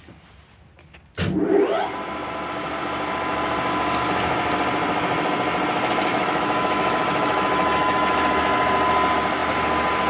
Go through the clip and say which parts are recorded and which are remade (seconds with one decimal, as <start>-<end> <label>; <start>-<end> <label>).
0.0-6.1 recorded; 6.1-8.3 remade; 8.3-10.1 recorded